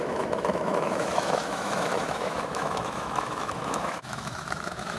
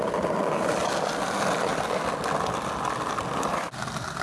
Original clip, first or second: second